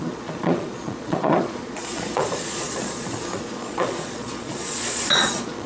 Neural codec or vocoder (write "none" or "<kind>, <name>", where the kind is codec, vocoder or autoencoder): vocoder, Vocos